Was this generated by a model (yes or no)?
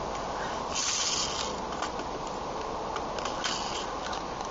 no